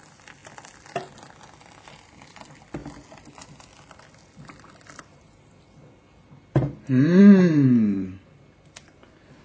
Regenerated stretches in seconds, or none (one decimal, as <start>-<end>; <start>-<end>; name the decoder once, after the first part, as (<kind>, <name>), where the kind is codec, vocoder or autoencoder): none